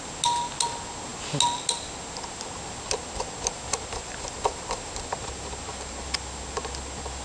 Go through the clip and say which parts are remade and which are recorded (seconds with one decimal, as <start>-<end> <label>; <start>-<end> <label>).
0.0-7.2 recorded

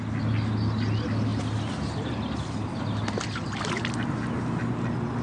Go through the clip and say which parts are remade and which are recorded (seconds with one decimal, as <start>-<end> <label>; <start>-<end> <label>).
0.0-5.2 recorded

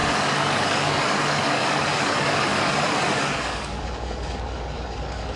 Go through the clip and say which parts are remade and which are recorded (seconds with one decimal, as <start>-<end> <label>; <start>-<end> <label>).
0.0-5.4 remade

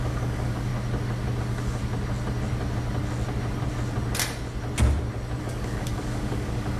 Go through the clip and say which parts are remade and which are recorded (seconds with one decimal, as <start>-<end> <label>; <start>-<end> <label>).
0.0-0.7 remade; 0.7-1.4 recorded; 1.4-1.8 remade; 1.8-5.4 recorded; 5.4-6.8 remade

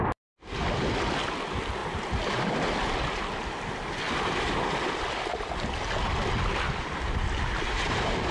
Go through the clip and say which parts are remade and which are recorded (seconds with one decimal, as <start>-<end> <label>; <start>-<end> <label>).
0.0-8.3 recorded

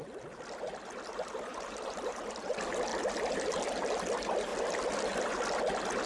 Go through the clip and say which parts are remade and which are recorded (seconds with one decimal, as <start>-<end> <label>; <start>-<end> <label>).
0.0-1.5 recorded; 1.5-2.3 remade; 2.3-6.1 recorded